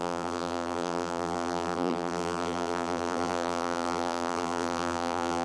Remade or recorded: remade